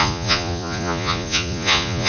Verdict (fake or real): fake